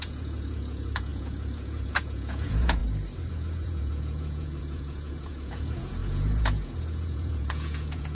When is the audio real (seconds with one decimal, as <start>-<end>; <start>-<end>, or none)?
2.8-3.3